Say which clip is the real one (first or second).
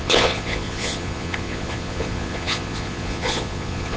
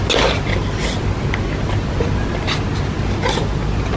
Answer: second